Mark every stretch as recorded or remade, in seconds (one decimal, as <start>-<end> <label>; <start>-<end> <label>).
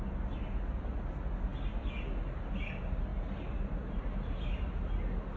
0.0-5.4 recorded